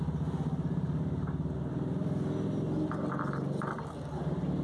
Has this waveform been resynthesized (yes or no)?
no